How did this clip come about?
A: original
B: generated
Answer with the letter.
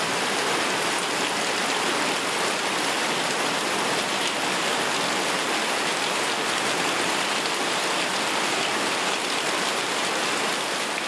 A